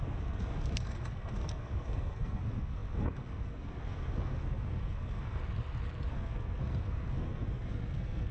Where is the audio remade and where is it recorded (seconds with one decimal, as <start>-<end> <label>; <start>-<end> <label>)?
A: 0.0-5.4 remade; 5.4-6.1 recorded; 6.1-8.3 remade

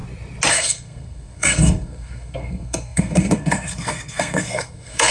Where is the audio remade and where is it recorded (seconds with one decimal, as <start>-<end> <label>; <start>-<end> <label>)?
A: 0.0-0.5 recorded; 0.5-5.1 remade

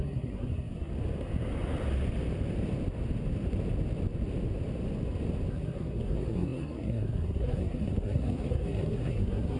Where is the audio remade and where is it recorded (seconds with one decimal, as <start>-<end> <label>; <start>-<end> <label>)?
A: 0.0-0.9 remade; 0.9-5.5 recorded; 5.5-9.6 remade

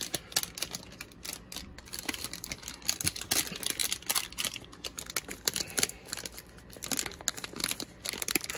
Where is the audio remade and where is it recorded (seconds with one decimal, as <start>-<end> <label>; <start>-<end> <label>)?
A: 0.0-8.6 recorded

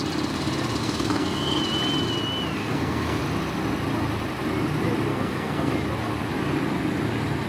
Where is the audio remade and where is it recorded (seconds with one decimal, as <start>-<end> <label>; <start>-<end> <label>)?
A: 0.0-0.8 recorded; 0.8-1.6 remade; 1.6-2.6 recorded; 2.6-3.2 remade; 3.2-5.1 recorded; 5.1-5.7 remade; 5.7-7.5 recorded

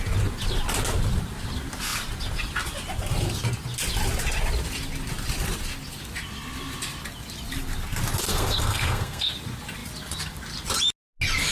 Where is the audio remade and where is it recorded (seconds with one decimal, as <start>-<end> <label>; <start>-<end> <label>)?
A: 0.0-8.3 recorded; 8.3-9.3 remade; 9.3-11.5 recorded